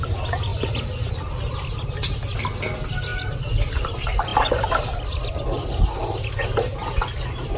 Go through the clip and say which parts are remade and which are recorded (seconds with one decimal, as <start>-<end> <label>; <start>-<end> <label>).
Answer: 0.0-4.3 recorded; 4.3-5.3 remade; 5.3-7.6 recorded